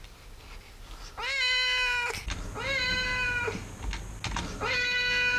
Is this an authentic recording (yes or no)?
yes